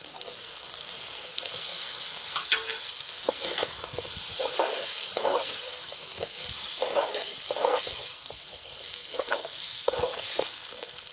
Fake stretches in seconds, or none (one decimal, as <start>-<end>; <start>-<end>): 0.0-11.1